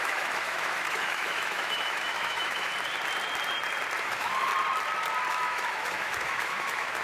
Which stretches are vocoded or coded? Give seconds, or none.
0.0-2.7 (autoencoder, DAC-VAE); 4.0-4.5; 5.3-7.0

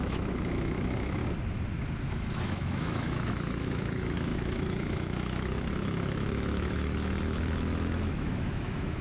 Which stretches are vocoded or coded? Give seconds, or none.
0.0-1.2 (autoencoder, DAC-VAE); 2.1-9.0

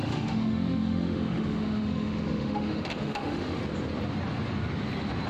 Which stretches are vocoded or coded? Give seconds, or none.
0.0-3.6 (autoencoder, DAC-VAE)